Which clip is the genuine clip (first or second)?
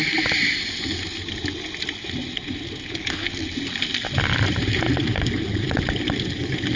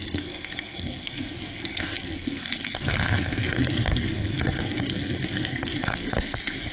first